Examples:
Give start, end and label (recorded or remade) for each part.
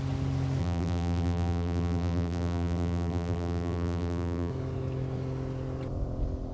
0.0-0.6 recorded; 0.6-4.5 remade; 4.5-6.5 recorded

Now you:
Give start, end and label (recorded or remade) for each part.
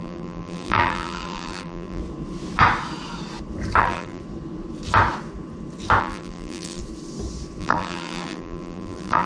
0.0-2.0 remade; 2.0-3.8 recorded; 3.8-4.2 remade; 4.2-6.0 recorded; 6.0-6.8 remade; 6.8-7.6 recorded; 7.6-9.3 remade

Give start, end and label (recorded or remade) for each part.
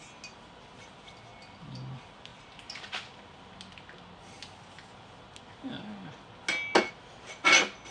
0.0-7.9 recorded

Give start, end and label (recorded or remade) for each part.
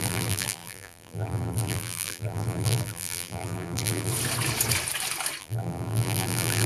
0.0-4.1 remade; 4.1-5.4 recorded; 5.4-6.7 remade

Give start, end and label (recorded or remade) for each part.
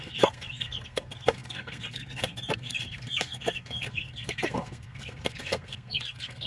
0.0-6.5 remade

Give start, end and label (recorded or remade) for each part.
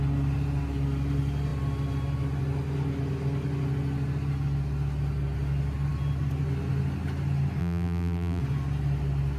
0.0-7.6 recorded; 7.6-8.4 remade; 8.4-9.4 recorded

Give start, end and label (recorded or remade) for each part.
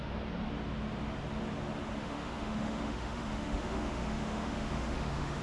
0.0-2.0 recorded; 2.0-5.4 remade